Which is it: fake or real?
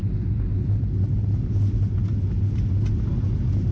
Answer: real